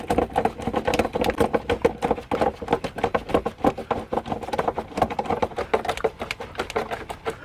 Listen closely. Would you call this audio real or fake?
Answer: real